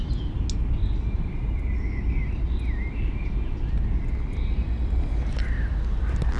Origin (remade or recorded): recorded